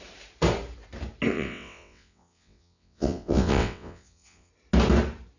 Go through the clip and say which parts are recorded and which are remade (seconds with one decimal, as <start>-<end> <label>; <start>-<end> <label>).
0.0-1.3 recorded; 1.3-4.5 remade; 4.5-5.4 recorded